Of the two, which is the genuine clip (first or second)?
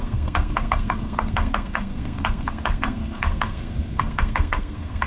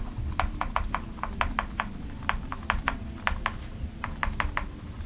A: second